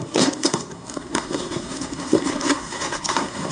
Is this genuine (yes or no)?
no